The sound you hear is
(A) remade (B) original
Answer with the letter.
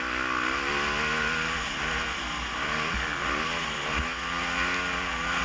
B